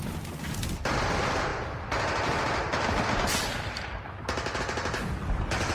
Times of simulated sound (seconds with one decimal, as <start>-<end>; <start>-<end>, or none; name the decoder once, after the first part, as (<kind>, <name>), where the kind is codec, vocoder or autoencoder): none